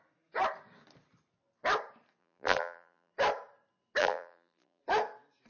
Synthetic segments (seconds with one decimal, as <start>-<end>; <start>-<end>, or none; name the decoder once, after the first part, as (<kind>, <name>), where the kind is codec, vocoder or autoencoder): 2.2-3.1 (vocoder, BigVGAN v2); 4.0-4.8